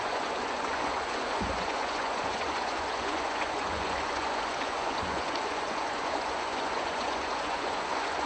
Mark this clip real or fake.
fake